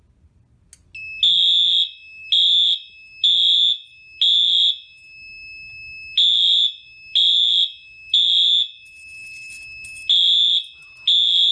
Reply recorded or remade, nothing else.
recorded